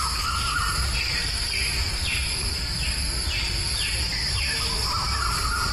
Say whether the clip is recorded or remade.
remade